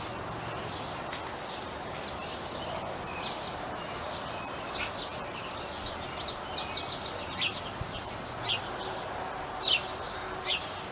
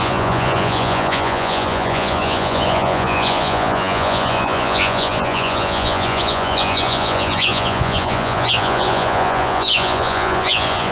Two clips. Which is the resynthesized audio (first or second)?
second